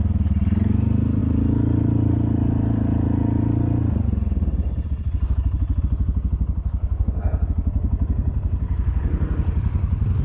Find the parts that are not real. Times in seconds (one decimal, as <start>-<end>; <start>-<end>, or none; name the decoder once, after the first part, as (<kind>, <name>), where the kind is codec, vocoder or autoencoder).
6.8-7.5 (codec, SNAC)